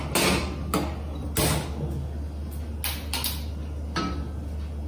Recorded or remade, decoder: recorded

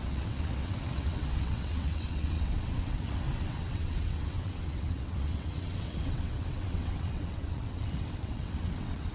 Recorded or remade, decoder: remade, vocoder, WaveNeXt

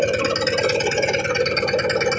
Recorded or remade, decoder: recorded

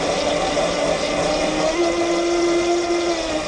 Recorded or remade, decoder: recorded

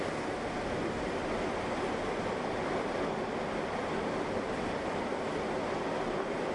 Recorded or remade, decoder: recorded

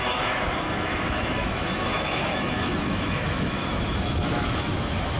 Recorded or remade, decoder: remade, autoencoder, DAC-VAE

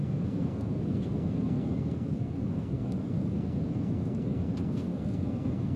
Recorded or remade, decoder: remade, codec, SNAC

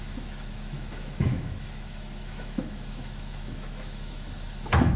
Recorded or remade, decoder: remade, autoencoder, DAC-VAE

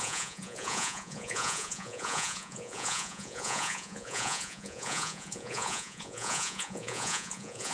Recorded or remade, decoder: remade, vocoder, Vocos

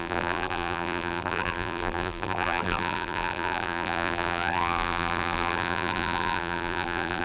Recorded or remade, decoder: remade, vocoder, BigVGAN v2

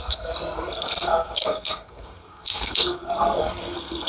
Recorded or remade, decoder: remade, codec, SNAC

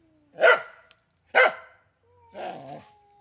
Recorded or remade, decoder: recorded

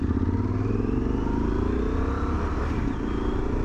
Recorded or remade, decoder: remade, vocoder, BigVGAN v2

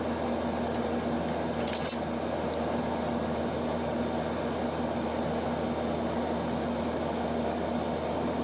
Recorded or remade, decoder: recorded